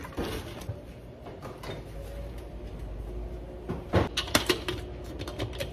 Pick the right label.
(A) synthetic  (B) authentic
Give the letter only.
B